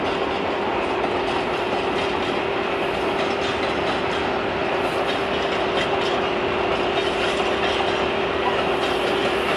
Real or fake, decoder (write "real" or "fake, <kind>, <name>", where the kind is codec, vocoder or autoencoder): real